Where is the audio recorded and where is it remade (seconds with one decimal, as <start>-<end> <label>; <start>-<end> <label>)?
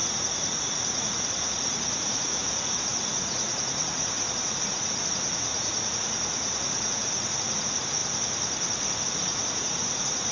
0.0-8.0 remade; 8.0-9.1 recorded; 9.1-10.3 remade